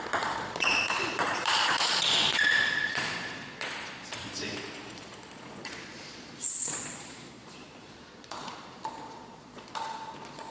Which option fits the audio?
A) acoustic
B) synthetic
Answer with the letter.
B